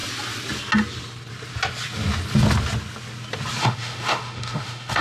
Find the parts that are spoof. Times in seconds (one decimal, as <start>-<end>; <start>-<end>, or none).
3.6-5.0